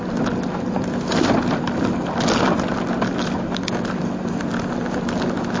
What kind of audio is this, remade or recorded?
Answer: recorded